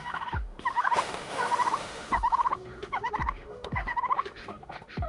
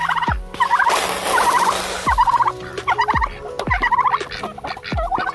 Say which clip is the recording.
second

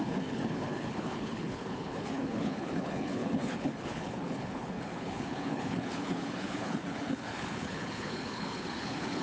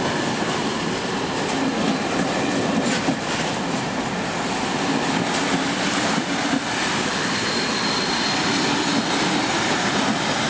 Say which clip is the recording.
second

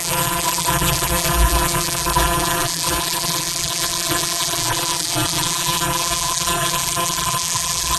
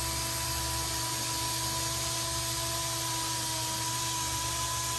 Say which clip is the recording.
second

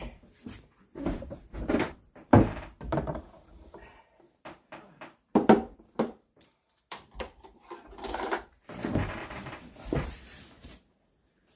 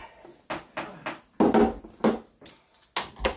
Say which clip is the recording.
second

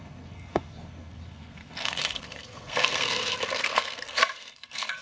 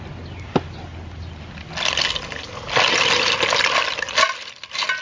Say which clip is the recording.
second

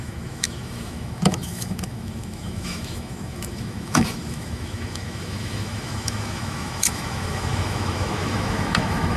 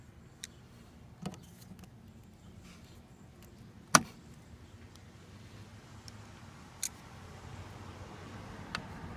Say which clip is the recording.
second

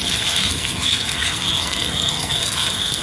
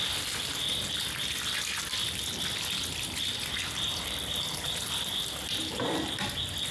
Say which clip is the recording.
second